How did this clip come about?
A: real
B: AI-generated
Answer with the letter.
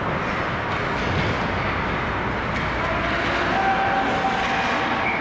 A